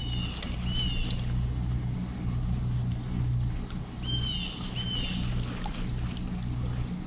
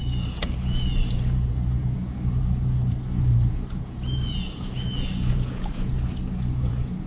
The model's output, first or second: second